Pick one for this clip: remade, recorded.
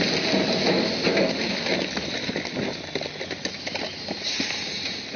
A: recorded